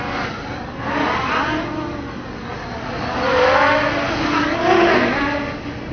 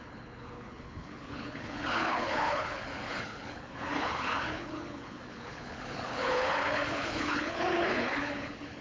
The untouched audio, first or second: first